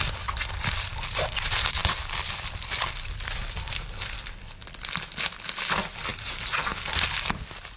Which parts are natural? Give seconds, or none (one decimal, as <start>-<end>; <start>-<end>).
0.0-7.8